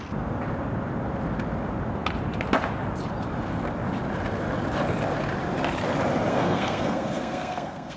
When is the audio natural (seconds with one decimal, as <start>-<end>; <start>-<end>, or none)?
0.0-6.3

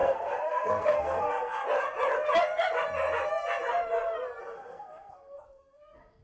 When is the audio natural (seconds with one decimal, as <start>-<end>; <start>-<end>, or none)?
1.6-4.4

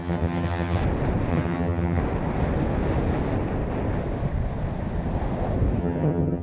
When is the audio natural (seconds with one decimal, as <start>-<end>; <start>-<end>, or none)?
0.8-1.3; 2.0-5.8

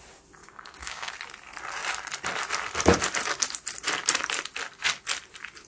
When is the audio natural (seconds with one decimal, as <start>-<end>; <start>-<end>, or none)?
0.0-0.4; 1.1-5.7

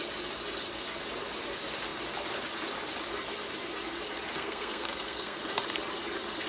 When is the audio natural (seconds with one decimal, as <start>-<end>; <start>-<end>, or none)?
0.0-4.3; 5.4-6.5